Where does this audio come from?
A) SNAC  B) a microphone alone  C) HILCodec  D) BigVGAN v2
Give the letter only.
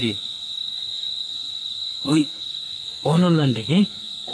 A